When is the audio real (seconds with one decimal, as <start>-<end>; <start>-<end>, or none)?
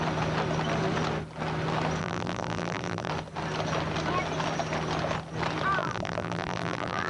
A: 0.0-2.0; 3.1-5.8